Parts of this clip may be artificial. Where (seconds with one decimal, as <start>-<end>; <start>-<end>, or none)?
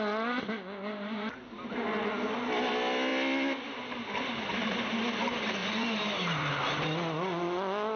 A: 5.6-6.5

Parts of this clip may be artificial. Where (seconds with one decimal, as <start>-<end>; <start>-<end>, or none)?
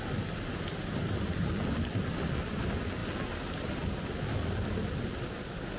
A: none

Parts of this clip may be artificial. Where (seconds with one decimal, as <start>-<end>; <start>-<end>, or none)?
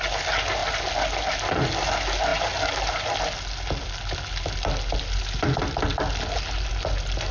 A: none